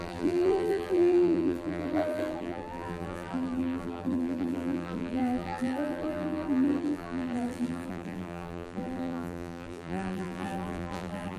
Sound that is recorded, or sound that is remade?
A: remade